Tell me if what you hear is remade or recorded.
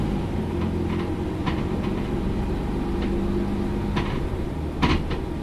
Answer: recorded